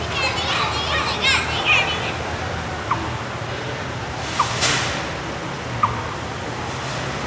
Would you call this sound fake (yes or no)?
no